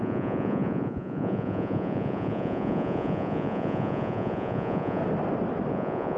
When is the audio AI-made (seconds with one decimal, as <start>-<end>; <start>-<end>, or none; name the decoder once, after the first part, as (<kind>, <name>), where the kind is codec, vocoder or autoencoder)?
0.0-5.0 (vocoder, Vocos); 5.7-6.2